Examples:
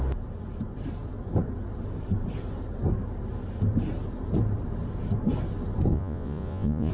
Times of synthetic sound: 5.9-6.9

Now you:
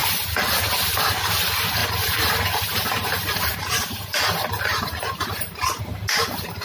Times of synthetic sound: 0.0-0.5; 1.8-5.8

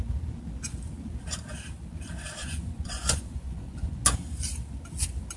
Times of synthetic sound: 2.4-4.0